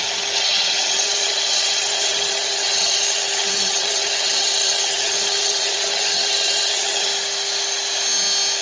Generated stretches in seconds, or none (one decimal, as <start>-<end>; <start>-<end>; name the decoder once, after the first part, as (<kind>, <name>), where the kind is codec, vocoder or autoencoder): 0.0-7.1 (vocoder, HiFi-GAN)